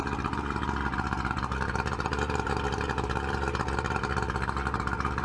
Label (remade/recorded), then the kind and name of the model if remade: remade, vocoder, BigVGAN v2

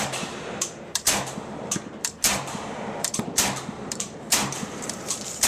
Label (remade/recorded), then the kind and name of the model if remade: remade, vocoder, BigVGAN v2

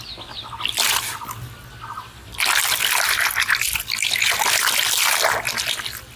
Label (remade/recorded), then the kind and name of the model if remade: recorded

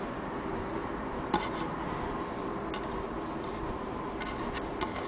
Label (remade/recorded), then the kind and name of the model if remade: recorded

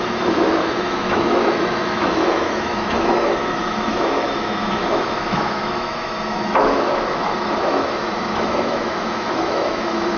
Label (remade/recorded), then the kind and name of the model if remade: remade, autoencoder, DAC-VAE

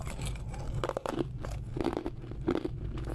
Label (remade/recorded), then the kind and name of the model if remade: recorded